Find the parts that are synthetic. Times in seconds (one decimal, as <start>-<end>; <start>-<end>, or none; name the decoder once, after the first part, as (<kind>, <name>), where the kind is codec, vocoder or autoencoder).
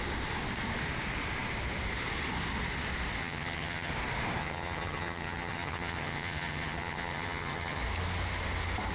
3.2-3.9 (vocoder, HiFi-GAN); 4.4-7.8